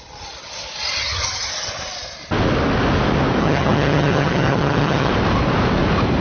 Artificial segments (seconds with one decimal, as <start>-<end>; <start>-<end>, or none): 1.0-1.5; 3.4-5.1

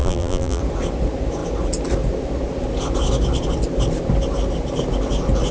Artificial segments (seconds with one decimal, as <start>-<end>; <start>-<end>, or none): 0.0-0.6

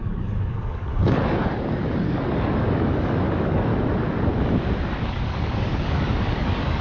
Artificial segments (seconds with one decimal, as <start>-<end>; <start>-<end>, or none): 0.0-3.7; 5.0-6.8

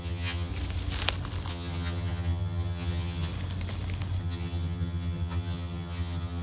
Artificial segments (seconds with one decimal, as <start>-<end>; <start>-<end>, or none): 0.0-0.5; 1.5-3.3; 4.2-6.4

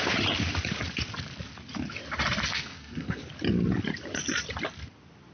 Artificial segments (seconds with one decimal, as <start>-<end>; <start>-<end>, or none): 2.5-3.2

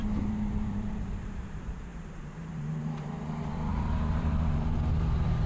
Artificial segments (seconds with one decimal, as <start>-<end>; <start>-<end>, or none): 0.0-5.5

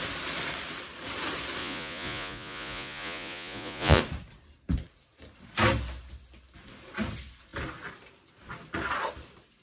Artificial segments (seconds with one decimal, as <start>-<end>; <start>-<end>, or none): 1.6-4.0